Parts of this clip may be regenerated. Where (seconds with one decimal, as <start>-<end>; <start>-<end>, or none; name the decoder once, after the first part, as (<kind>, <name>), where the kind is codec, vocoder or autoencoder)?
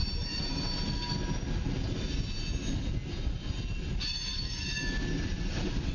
0.0-0.7 (vocoder, BigVGAN v2)